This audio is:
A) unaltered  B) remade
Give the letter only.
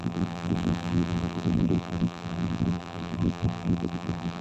B